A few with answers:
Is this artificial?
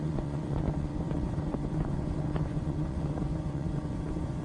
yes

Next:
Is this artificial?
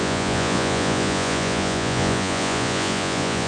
yes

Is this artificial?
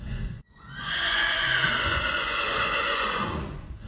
yes